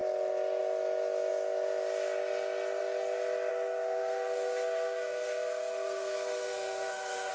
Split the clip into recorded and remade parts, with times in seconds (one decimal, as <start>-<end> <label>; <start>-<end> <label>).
0.0-3.5 recorded; 3.5-7.3 remade